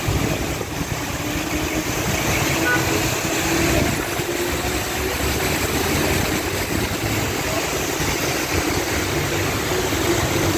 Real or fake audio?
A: real